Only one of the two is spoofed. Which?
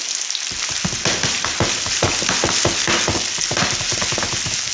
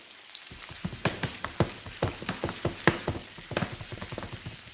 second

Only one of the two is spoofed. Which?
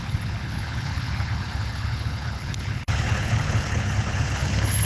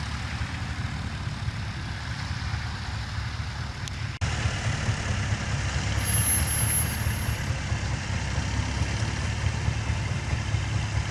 first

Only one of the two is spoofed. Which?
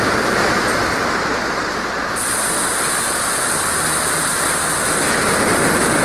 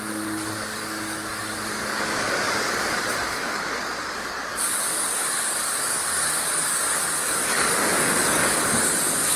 second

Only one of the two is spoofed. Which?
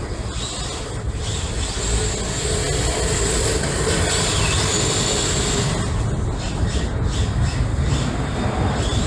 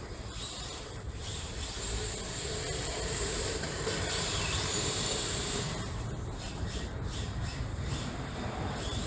second